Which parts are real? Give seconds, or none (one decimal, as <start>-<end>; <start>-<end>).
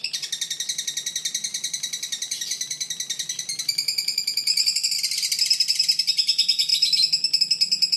0.0-1.5; 5.0-8.0